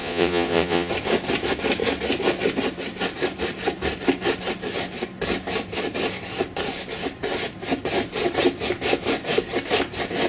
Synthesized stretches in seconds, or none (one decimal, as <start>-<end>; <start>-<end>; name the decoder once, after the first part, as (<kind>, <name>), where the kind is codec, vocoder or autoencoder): 0.0-0.9 (vocoder, Vocos)